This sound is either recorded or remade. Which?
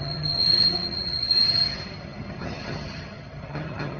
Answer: remade